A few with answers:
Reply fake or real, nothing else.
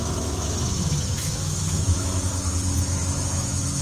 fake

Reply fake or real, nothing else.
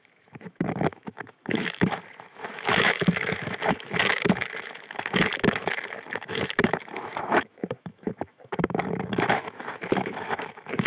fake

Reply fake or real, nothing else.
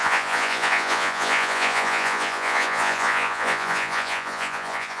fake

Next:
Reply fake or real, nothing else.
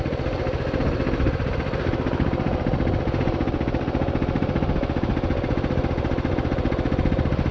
real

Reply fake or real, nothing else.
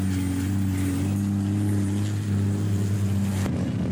real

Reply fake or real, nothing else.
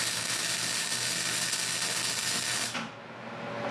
real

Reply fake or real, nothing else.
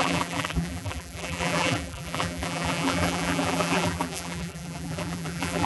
fake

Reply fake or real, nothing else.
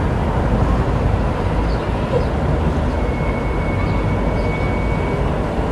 real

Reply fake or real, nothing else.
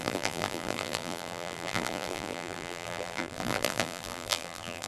fake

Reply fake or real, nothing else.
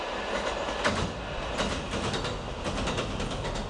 real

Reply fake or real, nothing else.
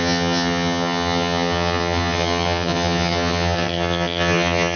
fake